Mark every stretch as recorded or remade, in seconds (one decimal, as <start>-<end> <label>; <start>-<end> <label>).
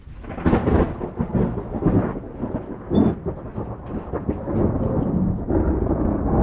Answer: 0.0-3.5 recorded; 3.5-4.3 remade; 4.3-6.4 recorded